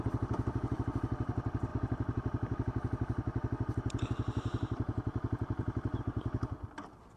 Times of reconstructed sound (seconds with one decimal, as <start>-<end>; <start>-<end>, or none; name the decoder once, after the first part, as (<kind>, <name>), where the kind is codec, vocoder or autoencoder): none